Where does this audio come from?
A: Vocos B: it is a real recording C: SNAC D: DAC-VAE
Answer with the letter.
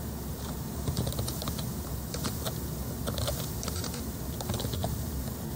B